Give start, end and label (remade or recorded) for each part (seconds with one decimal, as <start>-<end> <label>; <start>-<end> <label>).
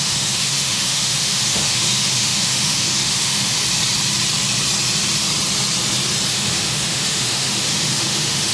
0.0-3.6 remade; 3.6-6.3 recorded; 6.3-8.5 remade